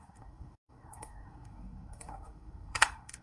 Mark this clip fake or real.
fake